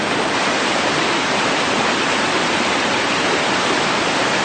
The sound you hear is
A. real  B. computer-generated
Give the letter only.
B